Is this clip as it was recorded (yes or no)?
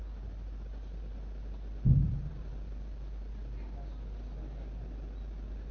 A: yes